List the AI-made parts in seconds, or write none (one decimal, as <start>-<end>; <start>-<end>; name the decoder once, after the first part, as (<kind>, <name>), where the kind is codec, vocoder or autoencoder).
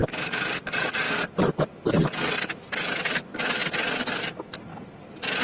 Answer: none